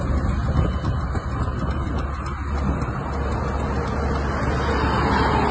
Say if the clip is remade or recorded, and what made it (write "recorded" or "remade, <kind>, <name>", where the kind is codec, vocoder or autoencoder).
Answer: recorded